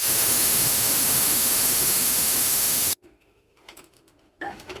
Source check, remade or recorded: remade